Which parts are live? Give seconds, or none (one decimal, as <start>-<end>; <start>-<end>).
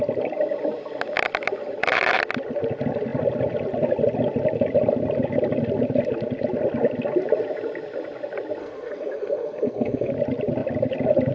0.0-8.6; 10.1-11.3